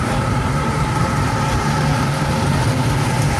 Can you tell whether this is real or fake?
fake